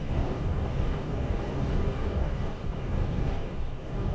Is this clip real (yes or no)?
no